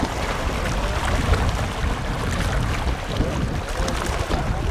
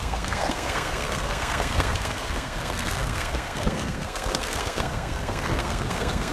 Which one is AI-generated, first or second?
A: second